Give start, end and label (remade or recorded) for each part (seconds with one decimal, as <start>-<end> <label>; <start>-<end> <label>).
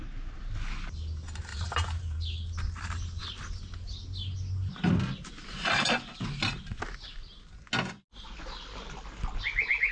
0.0-1.5 recorded; 1.5-2.2 remade; 2.2-9.9 recorded